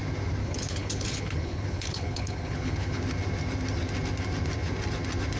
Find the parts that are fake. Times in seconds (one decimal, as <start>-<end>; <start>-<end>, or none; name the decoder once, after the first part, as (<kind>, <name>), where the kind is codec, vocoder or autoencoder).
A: 0.4-3.0 (codec, HILCodec)